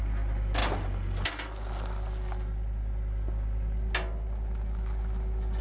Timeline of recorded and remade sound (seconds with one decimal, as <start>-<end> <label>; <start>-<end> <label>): 0.0-5.6 recorded